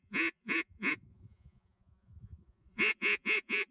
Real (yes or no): no